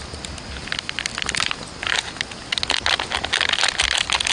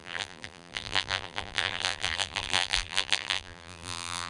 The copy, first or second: second